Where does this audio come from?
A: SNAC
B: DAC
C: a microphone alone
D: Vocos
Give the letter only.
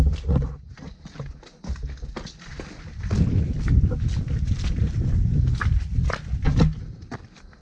C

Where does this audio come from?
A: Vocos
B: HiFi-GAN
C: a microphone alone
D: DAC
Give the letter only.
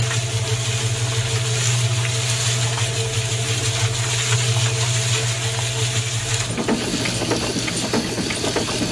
C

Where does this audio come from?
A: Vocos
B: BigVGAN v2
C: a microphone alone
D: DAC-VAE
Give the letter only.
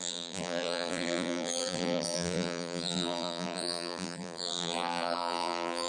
B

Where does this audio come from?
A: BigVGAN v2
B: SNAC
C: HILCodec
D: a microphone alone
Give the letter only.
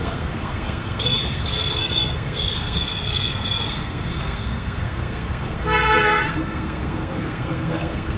B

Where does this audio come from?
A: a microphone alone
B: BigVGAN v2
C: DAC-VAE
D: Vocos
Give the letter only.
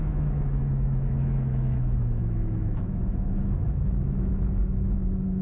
C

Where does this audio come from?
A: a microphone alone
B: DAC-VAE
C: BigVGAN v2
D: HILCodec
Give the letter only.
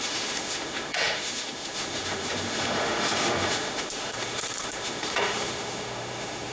B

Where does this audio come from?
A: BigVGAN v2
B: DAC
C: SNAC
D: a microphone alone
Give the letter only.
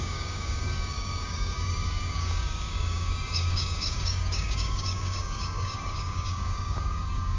B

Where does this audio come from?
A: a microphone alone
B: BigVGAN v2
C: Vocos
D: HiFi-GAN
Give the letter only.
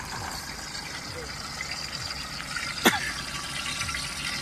A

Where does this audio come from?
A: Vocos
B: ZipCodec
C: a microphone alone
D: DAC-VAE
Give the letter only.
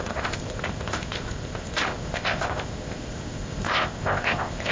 B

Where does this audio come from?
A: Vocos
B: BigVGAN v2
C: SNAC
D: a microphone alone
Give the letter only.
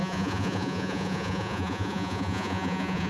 A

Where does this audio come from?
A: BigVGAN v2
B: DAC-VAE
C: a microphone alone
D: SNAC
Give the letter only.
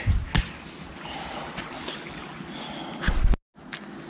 C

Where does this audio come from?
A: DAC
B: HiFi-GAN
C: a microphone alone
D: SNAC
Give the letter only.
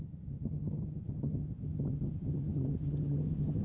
B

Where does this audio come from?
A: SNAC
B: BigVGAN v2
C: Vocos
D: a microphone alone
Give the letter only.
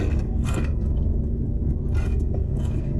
A